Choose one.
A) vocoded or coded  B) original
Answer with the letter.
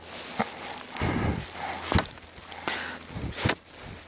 B